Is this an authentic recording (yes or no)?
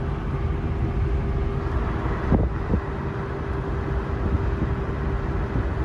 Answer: yes